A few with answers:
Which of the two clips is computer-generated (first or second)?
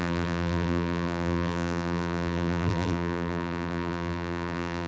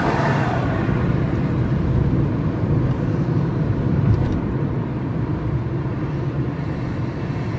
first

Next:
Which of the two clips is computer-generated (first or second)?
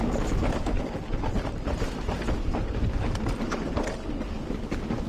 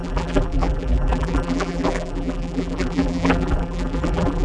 second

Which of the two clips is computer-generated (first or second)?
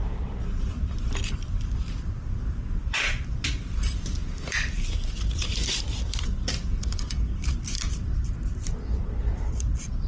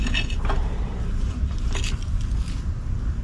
first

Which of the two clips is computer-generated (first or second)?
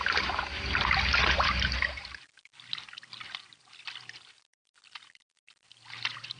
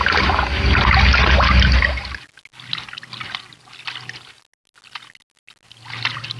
first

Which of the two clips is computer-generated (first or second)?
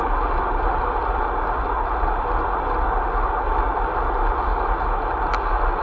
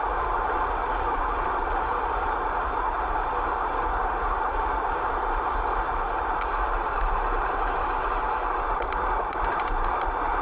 second